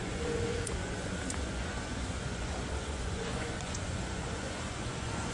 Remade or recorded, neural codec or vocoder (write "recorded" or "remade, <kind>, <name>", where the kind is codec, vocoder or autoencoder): remade, vocoder, Vocos